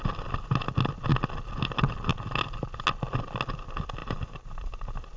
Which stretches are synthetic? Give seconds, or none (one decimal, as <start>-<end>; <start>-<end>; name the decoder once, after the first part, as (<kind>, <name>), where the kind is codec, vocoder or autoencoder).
4.0-5.2 (vocoder, BigVGAN v2)